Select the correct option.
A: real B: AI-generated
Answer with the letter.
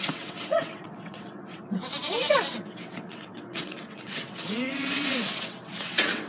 B